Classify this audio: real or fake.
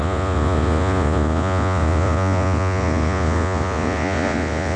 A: fake